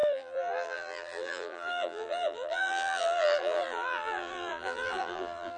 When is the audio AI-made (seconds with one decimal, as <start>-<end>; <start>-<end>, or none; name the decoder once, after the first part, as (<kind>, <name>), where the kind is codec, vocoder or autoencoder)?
0.0-5.6 (vocoder, BigVGAN v2)